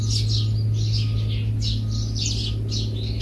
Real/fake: real